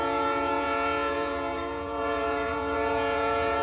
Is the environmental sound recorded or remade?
remade